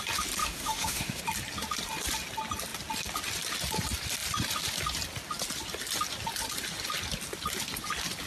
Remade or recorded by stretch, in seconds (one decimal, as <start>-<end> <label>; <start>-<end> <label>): 0.0-0.4 recorded; 0.4-1.2 remade; 1.2-8.3 recorded